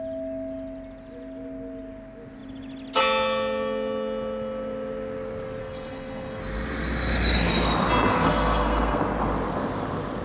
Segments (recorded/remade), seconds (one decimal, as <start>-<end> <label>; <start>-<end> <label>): 0.0-5.6 recorded; 5.6-6.4 remade; 6.4-8.1 recorded; 8.1-9.0 remade; 9.0-10.2 recorded